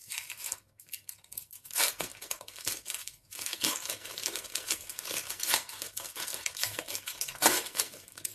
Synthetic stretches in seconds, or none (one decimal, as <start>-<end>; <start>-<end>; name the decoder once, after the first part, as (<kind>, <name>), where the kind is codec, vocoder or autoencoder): 0.0-8.3 (codec, SNAC)